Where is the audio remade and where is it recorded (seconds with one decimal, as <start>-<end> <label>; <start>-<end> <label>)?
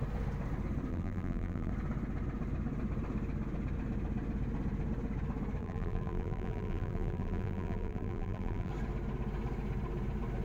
0.0-0.9 recorded; 0.9-1.7 remade; 1.7-5.6 recorded; 5.6-8.7 remade; 8.7-10.4 recorded